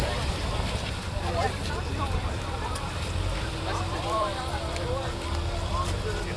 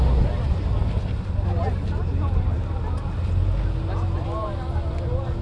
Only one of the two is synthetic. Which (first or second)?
first